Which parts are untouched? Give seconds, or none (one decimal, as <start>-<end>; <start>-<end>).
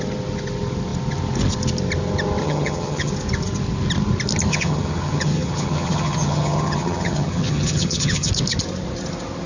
0.0-2.4; 3.1-4.5; 8.3-9.5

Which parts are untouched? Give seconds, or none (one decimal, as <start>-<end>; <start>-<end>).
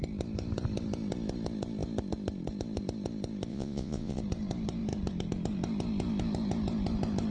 0.0-3.5; 4.2-7.3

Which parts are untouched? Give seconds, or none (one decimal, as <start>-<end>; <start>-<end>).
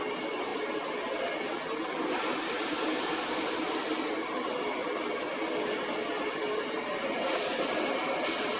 0.0-8.6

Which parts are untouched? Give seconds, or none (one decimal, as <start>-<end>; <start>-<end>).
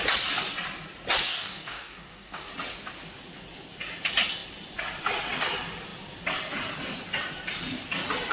0.0-1.3; 2.5-8.3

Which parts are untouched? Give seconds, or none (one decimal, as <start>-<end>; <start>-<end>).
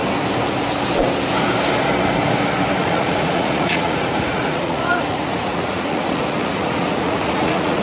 0.0-2.8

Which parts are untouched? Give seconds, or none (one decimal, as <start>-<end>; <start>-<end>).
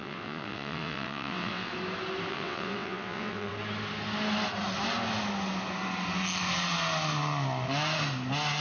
1.7-2.3; 3.5-8.6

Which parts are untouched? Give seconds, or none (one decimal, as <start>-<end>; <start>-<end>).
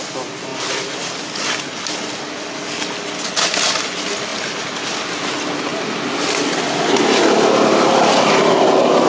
0.0-9.1